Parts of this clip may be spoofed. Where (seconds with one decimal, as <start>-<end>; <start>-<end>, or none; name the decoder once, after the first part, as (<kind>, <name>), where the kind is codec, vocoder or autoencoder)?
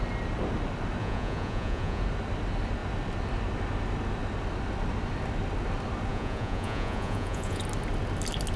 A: 1.0-2.0 (vocoder, Vocos); 6.1-7.6